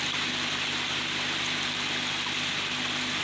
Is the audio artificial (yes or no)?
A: no